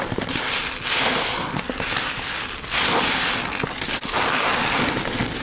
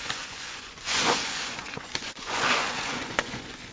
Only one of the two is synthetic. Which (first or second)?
second